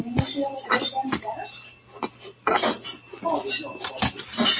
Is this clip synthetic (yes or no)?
yes